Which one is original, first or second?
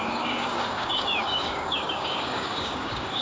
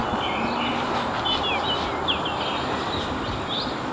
second